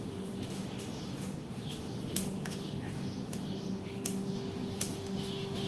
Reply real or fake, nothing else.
fake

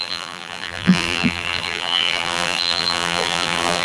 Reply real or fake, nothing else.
fake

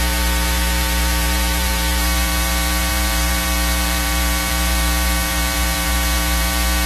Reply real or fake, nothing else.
fake